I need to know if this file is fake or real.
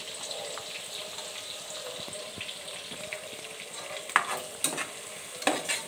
real